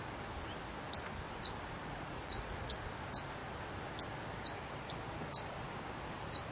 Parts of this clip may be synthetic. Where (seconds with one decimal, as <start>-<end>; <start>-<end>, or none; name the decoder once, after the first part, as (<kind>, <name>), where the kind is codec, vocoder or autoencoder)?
1.8-2.7 (vocoder, Vocos)